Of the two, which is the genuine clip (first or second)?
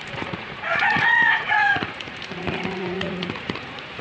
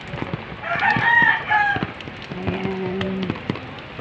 second